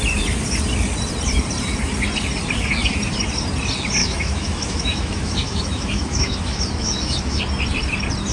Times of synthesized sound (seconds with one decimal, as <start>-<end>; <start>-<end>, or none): 4.0-7.4